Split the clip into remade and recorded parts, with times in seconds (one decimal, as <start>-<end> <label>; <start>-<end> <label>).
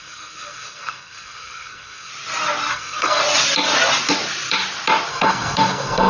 0.0-2.1 remade; 2.1-2.7 recorded; 2.7-3.2 remade; 3.2-5.1 recorded; 5.1-6.1 remade